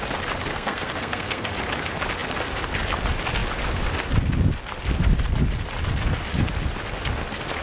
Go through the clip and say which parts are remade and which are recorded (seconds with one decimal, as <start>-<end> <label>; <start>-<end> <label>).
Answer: 0.0-0.5 recorded; 0.5-1.5 remade; 1.5-7.6 recorded